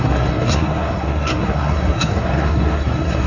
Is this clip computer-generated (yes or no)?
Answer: yes